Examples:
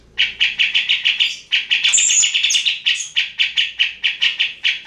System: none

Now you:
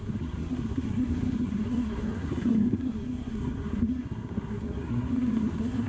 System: codec, SNAC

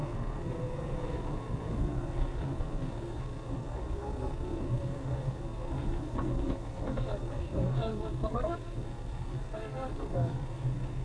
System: codec, SNAC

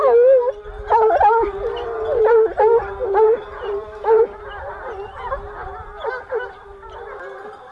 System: none